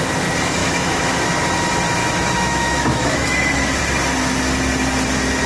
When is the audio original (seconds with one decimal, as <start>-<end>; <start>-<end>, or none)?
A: 0.0-0.6; 1.2-2.0; 3.8-5.5